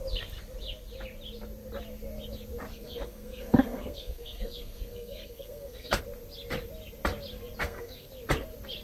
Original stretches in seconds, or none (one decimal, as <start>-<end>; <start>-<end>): 0.0-2.7; 6.0-7.6; 8.1-8.8